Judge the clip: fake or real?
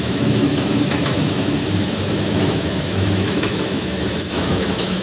fake